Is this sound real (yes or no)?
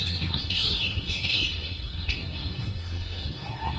no